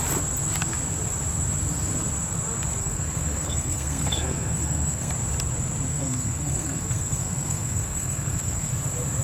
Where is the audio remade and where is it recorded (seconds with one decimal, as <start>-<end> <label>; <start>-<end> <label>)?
0.0-2.8 recorded; 2.8-5.1 remade; 5.1-5.9 recorded; 5.9-8.7 remade; 8.7-9.2 recorded